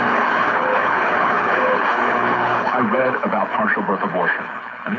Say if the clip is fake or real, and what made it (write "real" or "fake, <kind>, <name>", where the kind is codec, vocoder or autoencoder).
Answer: fake, codec, HILCodec